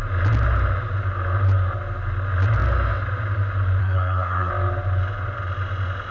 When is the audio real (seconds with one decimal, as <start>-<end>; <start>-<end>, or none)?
0.0-3.8; 4.5-6.1